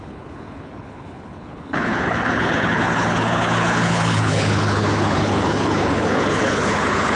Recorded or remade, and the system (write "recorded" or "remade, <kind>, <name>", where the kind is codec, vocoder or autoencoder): remade, codec, HILCodec